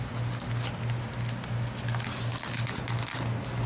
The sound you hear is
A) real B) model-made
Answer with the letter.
A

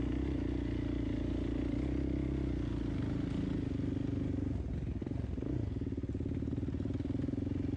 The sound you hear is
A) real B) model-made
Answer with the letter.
A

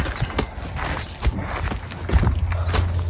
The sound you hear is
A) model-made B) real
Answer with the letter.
B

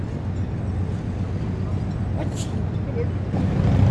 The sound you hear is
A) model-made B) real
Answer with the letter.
B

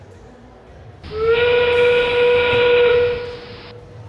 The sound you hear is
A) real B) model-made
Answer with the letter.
A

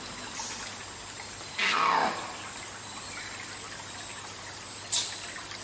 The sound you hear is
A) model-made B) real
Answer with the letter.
B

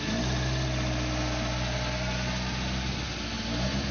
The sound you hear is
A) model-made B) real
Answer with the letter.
B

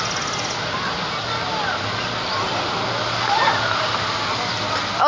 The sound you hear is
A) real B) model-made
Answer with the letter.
A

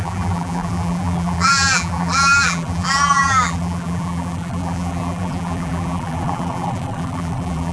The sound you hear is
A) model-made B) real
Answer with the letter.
A